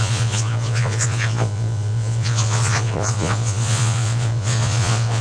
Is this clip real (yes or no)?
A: no